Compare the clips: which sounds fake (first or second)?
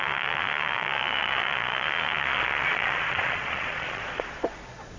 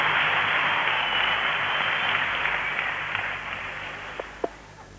first